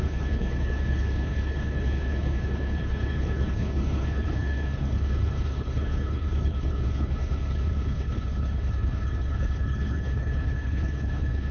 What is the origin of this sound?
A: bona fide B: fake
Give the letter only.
B